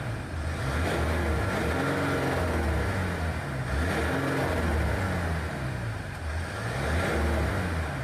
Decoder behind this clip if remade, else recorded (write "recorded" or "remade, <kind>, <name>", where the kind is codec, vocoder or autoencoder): recorded